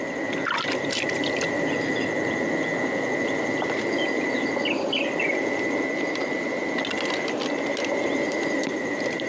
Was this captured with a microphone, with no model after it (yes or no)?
yes